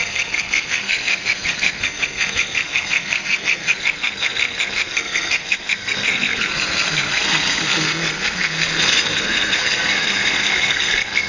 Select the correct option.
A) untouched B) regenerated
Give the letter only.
B